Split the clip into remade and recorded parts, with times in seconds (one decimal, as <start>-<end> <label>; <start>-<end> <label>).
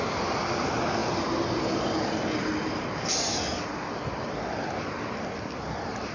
0.0-6.1 recorded